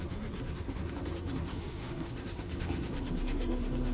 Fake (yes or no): yes